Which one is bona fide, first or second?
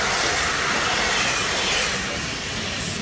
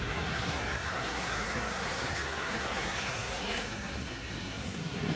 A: first